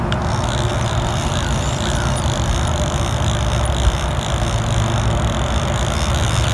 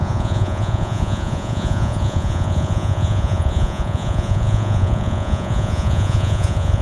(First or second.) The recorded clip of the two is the first